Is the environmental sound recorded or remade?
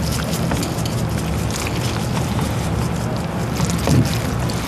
recorded